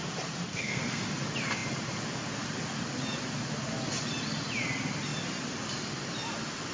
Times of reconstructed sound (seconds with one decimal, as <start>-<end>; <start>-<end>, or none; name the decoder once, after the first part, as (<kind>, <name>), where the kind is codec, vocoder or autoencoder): 0.5-1.0 (codec, SNAC)